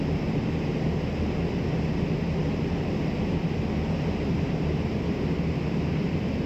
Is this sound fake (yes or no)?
no